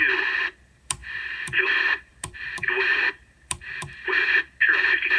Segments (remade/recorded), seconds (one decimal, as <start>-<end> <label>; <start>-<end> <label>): 0.0-5.2 remade